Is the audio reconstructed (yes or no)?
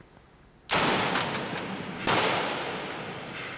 no